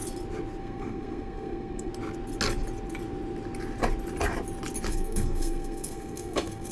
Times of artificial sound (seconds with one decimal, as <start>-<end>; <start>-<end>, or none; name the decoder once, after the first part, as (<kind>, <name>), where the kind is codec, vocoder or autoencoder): 0.6-1.9 (codec, SNAC); 4.9-6.7